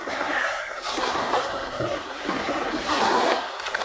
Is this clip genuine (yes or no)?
no